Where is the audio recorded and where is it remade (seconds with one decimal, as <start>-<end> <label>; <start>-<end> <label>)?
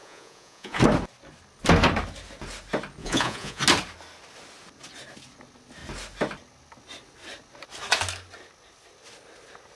0.0-0.8 remade; 0.8-3.0 recorded; 3.0-3.6 remade; 3.6-9.8 recorded